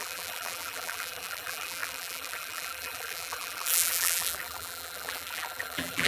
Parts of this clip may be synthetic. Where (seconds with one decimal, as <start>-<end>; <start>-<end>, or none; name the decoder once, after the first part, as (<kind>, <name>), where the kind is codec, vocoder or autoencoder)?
0.0-6.1 (vocoder, BigVGAN v2)